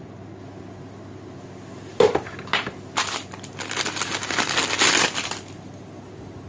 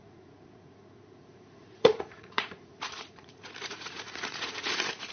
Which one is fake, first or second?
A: second